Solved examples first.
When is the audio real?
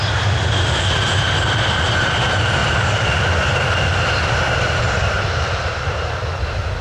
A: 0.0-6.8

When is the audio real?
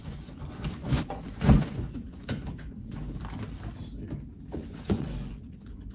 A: 3.2-4.5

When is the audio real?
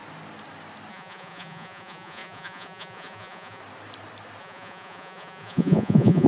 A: 0.0-0.9; 3.6-4.4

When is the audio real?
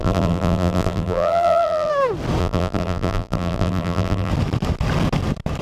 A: 1.9-2.4; 4.3-5.6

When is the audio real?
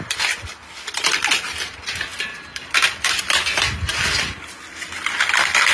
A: 0.0-5.7